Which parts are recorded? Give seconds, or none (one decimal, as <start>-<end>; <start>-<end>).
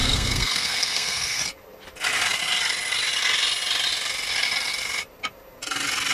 1.4-6.1